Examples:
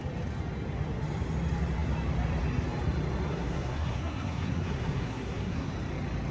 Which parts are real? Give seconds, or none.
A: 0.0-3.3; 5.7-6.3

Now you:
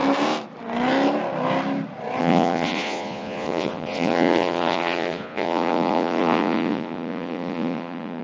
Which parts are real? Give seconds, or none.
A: 0.0-2.2

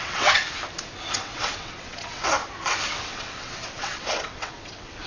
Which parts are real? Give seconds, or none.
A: 0.4-1.1; 2.4-3.0

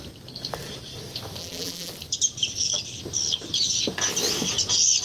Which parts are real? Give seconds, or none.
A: 0.0-1.4; 1.9-5.0

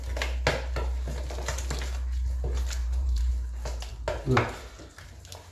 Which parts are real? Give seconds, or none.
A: 0.0-2.8; 3.3-5.5

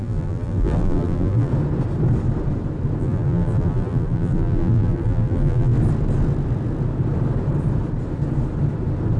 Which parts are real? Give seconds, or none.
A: 1.5-3.0; 5.7-9.2

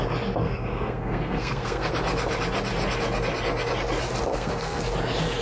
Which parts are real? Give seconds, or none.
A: 0.0-0.4; 1.9-4.3; 4.8-5.4

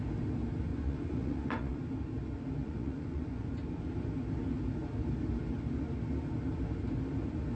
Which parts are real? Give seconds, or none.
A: 0.0-0.7; 1.8-2.6; 3.5-7.5